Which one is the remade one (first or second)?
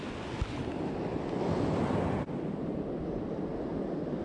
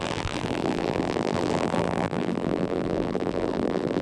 second